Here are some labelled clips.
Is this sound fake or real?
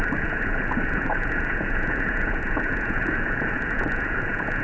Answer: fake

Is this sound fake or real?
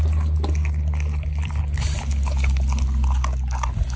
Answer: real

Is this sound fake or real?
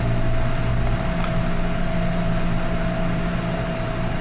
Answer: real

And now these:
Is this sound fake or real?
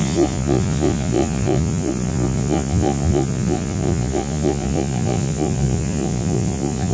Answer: fake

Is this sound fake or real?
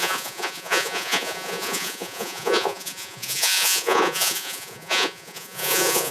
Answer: fake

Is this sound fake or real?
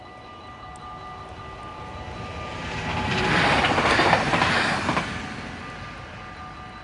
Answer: real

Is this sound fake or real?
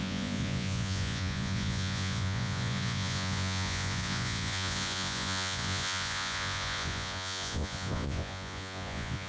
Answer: fake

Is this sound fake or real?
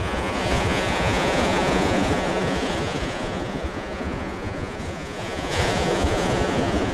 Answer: fake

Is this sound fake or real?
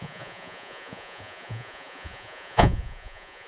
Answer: fake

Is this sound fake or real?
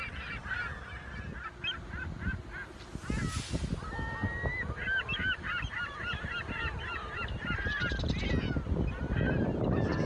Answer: real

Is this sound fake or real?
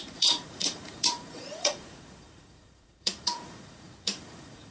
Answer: fake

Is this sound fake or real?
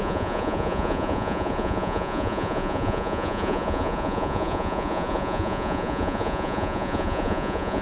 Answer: fake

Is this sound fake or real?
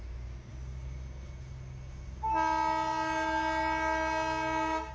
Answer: real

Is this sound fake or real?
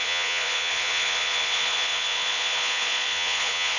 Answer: fake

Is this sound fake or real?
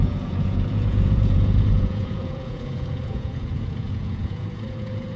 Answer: fake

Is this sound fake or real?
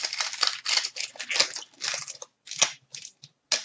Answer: real